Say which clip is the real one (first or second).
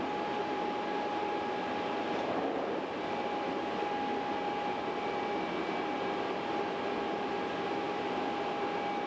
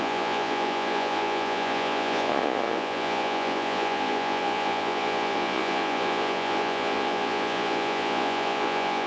first